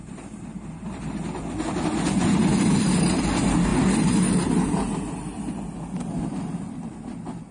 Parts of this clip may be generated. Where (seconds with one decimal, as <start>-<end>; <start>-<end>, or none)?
none

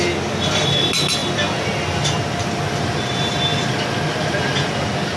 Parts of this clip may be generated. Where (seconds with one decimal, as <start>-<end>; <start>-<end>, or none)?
none

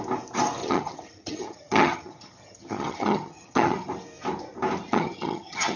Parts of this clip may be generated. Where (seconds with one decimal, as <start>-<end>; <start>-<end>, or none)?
0.6-3.9; 4.9-5.8

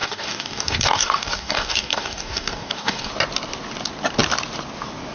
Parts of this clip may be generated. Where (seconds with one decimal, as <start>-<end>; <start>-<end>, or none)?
0.0-3.1

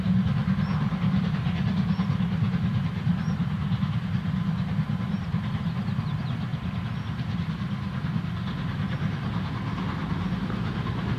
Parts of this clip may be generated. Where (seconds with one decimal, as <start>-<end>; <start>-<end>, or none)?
0.7-3.9; 6.5-7.5